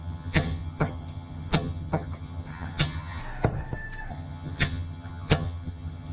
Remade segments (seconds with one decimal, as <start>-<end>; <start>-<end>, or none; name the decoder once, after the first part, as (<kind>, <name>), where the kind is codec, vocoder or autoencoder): 0.0-3.2 (vocoder, HiFi-GAN); 4.1-6.1